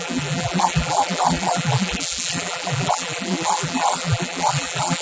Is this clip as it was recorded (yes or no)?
no